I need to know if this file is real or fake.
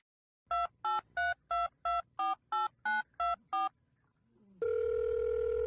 real